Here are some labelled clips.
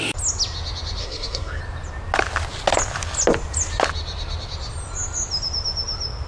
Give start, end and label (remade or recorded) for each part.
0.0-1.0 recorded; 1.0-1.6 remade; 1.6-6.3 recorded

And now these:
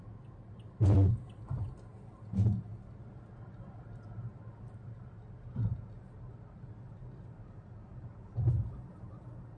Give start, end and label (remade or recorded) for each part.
0.0-9.6 recorded

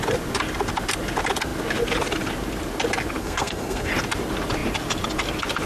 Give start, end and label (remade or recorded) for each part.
0.0-3.2 recorded; 3.2-3.9 remade; 3.9-5.7 recorded